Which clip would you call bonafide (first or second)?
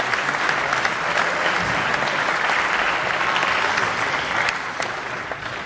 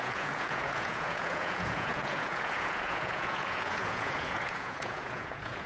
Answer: first